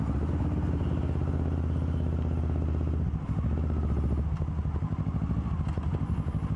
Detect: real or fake real